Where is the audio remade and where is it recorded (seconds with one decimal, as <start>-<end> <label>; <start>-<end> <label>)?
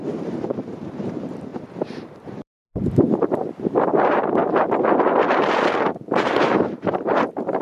0.0-4.4 remade; 4.4-5.8 recorded; 5.8-7.6 remade